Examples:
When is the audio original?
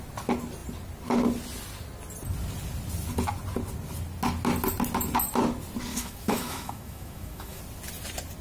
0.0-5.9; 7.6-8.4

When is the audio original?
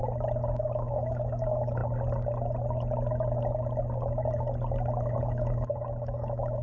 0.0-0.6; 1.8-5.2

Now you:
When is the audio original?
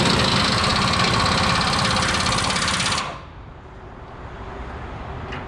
0.0-5.5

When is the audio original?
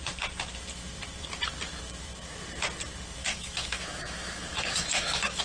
0.0-3.2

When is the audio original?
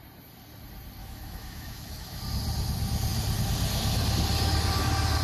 0.0-1.0; 2.2-5.2